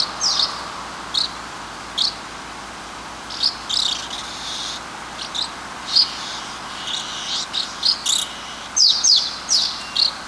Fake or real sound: real